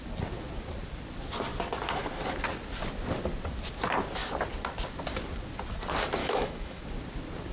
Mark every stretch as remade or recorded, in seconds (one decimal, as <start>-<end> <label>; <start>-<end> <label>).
0.0-6.2 recorded; 6.2-6.8 remade; 6.8-7.5 recorded